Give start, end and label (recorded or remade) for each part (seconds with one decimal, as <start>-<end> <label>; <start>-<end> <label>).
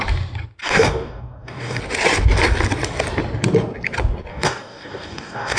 0.0-0.6 recorded; 0.6-1.8 remade; 1.8-4.3 recorded; 4.3-5.6 remade